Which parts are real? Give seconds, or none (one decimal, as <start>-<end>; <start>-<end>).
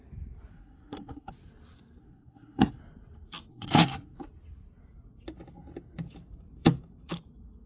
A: 0.0-0.5; 1.3-2.0; 2.8-3.5; 4.2-7.7